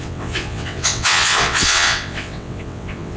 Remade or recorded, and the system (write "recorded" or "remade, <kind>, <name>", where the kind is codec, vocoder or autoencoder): remade, vocoder, WaveNeXt